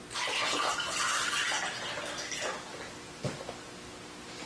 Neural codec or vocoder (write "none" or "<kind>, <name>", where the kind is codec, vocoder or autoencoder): none